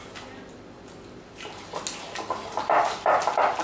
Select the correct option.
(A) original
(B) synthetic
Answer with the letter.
A